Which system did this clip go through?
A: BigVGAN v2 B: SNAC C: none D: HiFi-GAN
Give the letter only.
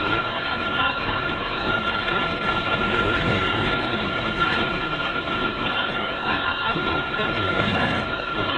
B